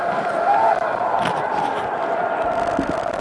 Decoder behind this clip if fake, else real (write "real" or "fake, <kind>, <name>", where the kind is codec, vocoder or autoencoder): real